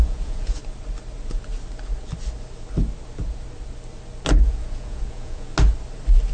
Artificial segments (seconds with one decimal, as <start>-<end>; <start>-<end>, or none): 0.0-0.6; 4.4-5.5